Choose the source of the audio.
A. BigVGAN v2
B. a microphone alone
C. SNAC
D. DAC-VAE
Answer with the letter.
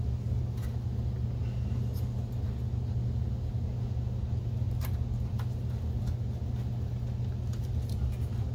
B